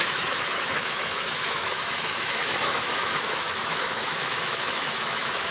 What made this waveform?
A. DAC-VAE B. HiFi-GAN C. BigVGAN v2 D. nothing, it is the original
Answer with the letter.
A